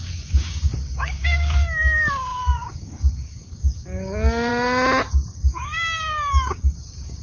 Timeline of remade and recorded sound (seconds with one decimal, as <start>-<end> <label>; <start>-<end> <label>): 0.0-4.5 remade; 4.5-5.1 recorded; 5.1-7.2 remade